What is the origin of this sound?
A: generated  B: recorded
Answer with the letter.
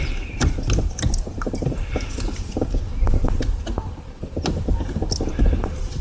B